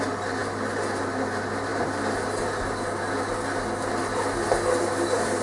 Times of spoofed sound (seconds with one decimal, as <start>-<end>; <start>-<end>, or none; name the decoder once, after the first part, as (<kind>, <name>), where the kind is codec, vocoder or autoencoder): none